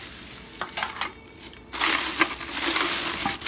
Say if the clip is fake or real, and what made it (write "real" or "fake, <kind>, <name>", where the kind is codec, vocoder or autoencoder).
real